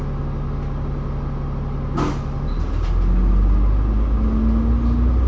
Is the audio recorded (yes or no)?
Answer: yes